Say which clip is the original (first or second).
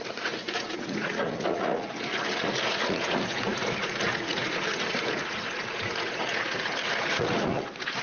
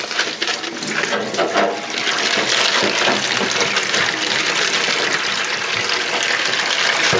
second